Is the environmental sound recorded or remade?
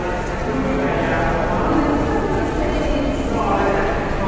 recorded